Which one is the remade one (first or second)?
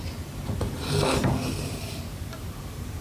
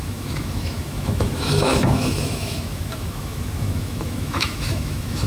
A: second